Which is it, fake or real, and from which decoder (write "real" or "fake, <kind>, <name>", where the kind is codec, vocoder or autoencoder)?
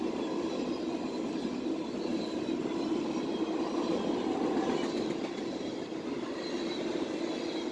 real